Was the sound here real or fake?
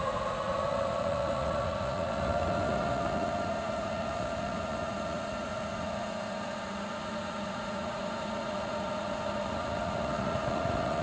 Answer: fake